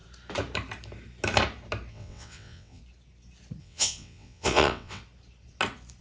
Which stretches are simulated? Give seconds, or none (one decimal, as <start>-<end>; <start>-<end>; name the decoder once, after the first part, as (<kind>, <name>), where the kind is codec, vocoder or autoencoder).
1.9-2.8 (vocoder, WaveNeXt); 3.6-5.0